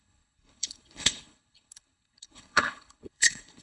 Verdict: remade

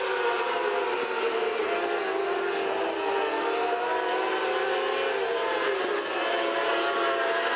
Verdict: recorded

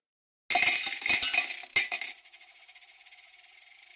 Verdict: recorded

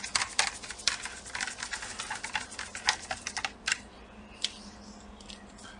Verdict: recorded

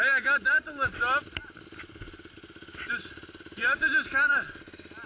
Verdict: recorded